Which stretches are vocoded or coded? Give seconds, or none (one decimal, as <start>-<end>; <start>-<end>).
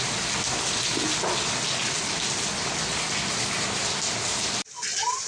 none